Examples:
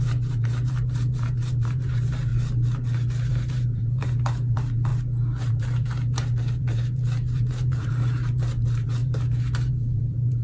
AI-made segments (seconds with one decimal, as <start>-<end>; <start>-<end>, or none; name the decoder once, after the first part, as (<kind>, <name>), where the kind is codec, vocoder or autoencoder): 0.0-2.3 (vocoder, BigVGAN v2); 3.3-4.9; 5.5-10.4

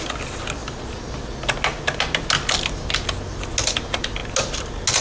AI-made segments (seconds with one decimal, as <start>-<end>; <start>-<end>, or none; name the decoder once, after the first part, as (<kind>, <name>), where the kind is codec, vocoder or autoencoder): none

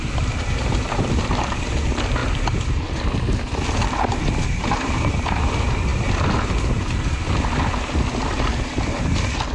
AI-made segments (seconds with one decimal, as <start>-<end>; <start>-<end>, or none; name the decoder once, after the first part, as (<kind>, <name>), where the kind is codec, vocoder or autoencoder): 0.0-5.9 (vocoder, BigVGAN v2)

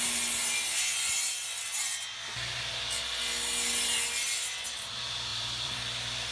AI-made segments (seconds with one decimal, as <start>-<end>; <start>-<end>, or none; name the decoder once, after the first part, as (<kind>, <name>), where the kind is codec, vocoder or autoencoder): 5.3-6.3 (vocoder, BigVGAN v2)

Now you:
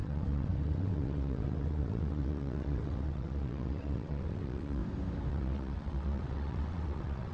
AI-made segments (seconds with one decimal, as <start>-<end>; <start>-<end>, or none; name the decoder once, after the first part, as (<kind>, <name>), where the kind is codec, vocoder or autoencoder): 0.0-4.8 (vocoder, WaveNeXt); 5.3-7.3

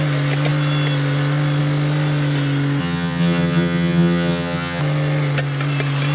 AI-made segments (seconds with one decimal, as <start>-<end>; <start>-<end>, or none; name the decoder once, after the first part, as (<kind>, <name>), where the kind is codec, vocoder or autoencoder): 2.8-4.8 (vocoder, HiFi-GAN)